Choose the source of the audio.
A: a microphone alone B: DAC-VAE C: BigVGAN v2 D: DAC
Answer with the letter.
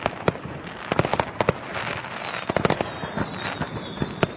A